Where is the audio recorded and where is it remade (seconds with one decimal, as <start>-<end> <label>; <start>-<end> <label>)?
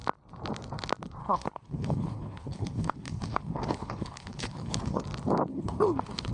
0.0-1.2 recorded; 1.2-5.0 remade; 5.0-5.5 recorded; 5.5-6.3 remade